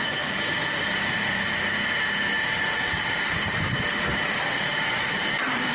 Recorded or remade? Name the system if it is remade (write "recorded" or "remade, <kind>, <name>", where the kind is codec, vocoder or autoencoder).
remade, vocoder, BigVGAN v2